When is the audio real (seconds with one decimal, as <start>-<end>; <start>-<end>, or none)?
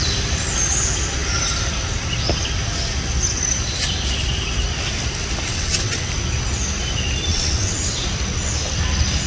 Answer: 0.0-5.5; 6.1-7.3; 7.8-9.3